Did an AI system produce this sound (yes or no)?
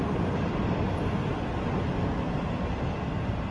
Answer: no